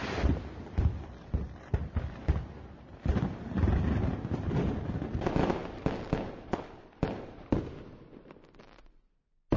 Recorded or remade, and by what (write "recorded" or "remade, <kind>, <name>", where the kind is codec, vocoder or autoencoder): recorded